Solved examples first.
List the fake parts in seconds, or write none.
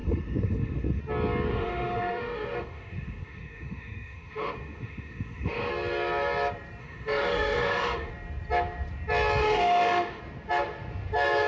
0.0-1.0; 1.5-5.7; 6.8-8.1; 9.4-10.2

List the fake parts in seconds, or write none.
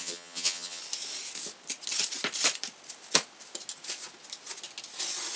0.0-0.8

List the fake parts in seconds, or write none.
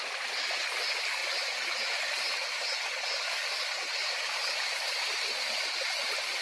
none